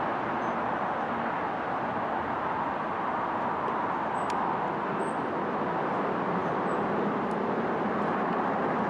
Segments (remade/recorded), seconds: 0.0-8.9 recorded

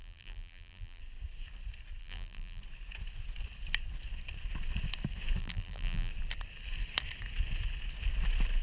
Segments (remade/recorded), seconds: 0.0-1.0 remade; 1.0-2.0 recorded; 2.0-2.6 remade; 2.6-5.4 recorded; 5.4-6.1 remade; 6.1-8.6 recorded

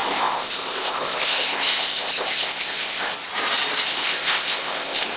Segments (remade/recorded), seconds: 0.0-3.1 remade; 3.1-3.9 recorded; 3.9-5.2 remade